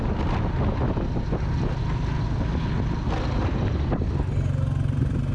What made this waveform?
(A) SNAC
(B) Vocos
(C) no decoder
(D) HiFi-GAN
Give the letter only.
C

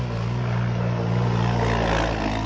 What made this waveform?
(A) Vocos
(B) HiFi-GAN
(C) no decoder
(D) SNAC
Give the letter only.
C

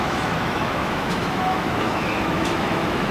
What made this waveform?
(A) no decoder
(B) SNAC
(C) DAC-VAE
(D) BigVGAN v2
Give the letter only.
C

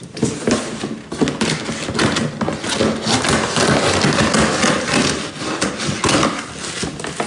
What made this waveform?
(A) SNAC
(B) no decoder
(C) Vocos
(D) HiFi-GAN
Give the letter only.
B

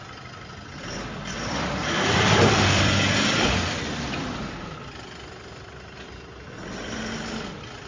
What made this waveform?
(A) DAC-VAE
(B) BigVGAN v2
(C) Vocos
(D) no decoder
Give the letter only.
B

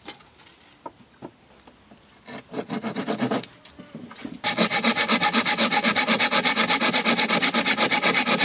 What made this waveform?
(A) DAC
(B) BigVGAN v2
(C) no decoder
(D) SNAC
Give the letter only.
C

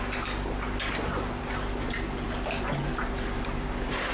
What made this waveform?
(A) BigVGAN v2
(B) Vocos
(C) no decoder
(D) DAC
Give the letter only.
C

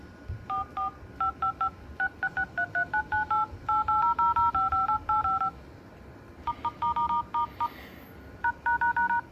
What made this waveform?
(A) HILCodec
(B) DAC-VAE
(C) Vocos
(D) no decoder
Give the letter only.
D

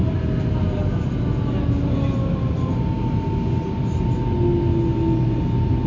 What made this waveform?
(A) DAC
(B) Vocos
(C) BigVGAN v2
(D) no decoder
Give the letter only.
D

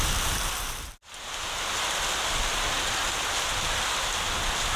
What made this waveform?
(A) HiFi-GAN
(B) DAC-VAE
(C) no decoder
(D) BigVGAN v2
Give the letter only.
C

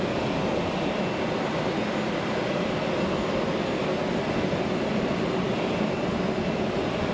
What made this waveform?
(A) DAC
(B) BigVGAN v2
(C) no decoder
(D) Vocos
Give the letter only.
C